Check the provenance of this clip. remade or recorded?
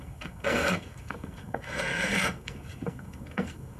remade